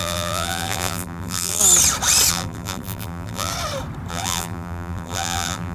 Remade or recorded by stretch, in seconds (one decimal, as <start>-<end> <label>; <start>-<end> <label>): 0.0-1.6 remade; 1.6-2.3 recorded; 2.3-3.5 remade; 3.5-4.1 recorded; 4.1-5.7 remade